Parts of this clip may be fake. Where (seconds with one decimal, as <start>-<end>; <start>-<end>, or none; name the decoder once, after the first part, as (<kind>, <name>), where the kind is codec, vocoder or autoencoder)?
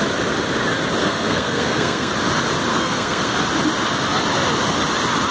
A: 1.0-2.1 (codec, SNAC); 2.7-3.3